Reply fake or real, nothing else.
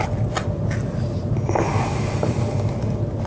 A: real